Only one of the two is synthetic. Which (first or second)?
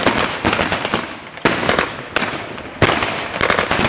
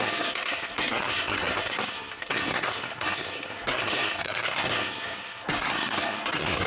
second